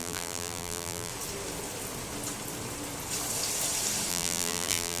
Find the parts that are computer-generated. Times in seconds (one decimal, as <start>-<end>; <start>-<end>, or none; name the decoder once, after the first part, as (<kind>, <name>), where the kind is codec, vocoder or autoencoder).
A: 0.0-1.1 (vocoder, BigVGAN v2); 4.1-5.0